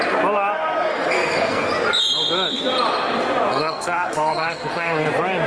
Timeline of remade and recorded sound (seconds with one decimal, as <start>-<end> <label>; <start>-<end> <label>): 0.0-0.9 recorded; 0.9-1.7 remade; 1.7-3.5 recorded; 3.5-5.1 remade; 5.1-5.5 recorded